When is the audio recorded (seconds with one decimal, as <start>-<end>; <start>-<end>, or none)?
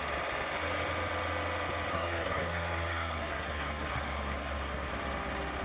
0.0-1.9; 4.9-5.6